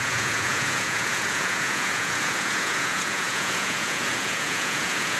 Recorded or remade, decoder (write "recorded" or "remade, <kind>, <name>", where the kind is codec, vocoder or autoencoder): remade, vocoder, Vocos